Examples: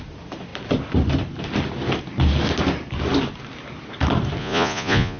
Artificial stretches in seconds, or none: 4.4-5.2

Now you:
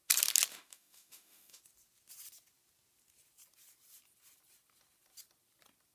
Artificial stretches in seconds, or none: 0.5-1.6

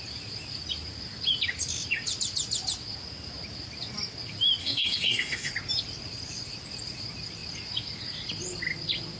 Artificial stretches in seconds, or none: 4.6-5.5

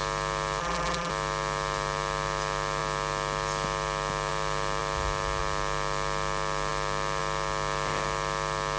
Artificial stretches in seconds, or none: 0.6-1.1

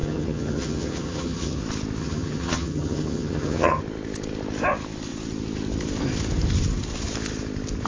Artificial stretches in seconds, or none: 0.0-1.6; 2.0-3.8